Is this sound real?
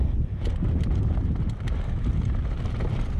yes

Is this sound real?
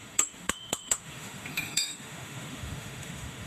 no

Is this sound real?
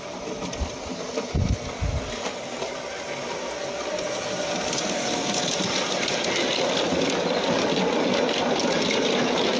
yes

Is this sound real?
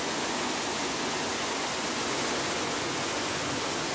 no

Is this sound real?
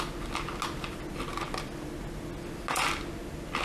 yes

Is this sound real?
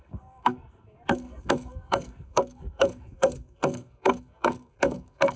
no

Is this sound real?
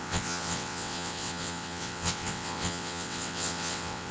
no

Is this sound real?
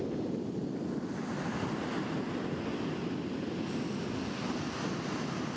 yes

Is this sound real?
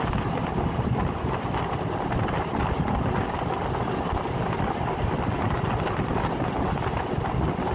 yes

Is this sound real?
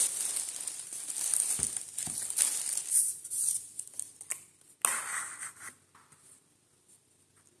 yes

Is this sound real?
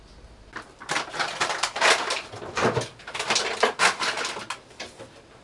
yes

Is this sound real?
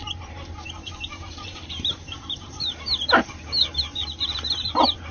no